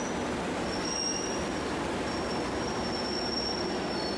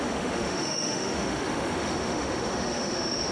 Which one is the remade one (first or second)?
second